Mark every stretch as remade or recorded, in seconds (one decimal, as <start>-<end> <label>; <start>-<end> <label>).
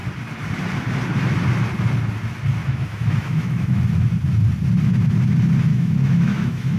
0.0-2.6 recorded; 2.6-3.8 remade; 3.8-5.7 recorded; 5.7-6.8 remade